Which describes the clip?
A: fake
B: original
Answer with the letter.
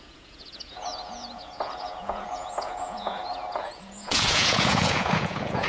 A